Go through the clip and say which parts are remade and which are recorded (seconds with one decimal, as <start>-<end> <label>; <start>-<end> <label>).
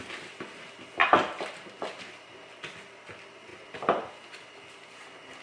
0.0-5.4 recorded